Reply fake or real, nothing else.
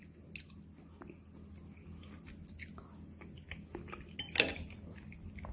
real